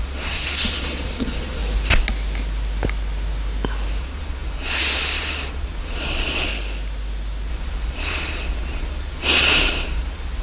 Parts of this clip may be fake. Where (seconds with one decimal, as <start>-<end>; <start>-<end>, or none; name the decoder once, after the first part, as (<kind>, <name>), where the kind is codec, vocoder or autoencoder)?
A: 0.0-1.6 (vocoder, Vocos); 4.0-6.5; 7.5-10.4